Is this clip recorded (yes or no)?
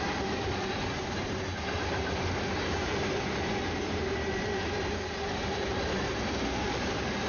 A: no